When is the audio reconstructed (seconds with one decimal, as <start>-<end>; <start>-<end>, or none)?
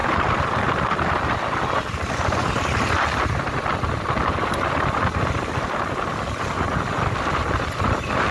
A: none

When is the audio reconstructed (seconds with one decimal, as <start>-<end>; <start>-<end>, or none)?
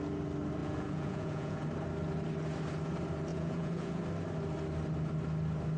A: 0.6-1.6; 3.3-4.0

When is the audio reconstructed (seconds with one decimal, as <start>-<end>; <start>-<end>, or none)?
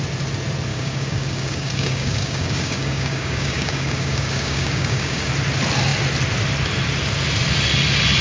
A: 0.7-5.3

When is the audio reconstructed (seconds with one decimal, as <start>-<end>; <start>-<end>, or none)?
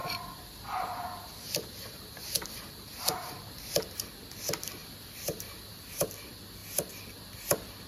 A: 0.0-3.3; 4.8-6.1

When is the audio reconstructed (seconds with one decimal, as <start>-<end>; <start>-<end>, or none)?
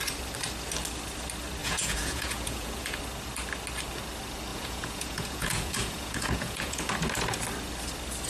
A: 1.6-3.0; 4.5-6.9